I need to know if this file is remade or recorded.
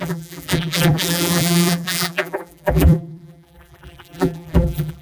remade